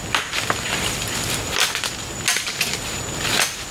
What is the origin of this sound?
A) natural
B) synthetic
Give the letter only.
A